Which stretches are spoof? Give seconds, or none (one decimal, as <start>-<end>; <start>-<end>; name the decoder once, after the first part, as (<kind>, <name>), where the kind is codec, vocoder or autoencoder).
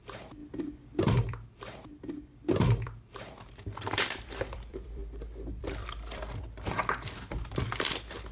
0.0-0.4 (vocoder, BigVGAN v2); 1.0-5.0; 5.5-8.3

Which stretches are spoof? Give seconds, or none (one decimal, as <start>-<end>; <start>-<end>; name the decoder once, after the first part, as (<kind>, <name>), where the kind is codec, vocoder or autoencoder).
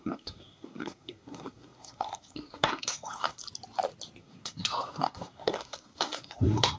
0.0-3.4 (codec, SNAC); 4.2-6.8